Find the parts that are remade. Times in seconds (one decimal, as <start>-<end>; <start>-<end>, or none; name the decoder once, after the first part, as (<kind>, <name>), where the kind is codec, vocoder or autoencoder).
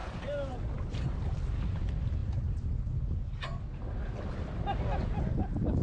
none